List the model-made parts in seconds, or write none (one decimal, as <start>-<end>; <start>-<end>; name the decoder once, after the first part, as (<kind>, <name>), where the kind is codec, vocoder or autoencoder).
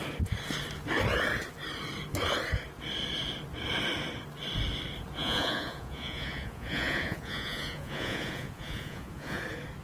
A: 5.2-9.4 (vocoder, Vocos)